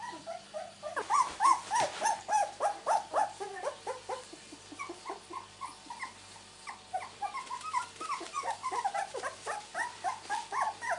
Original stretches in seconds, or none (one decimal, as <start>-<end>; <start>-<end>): 9.7-11.0